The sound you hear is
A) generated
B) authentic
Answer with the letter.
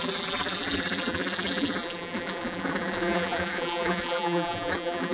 A